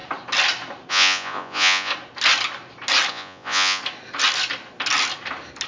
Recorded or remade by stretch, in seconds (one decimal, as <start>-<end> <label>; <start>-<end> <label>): 0.0-0.9 recorded; 0.9-1.9 remade; 1.9-3.1 recorded; 3.1-3.8 remade; 3.8-5.7 recorded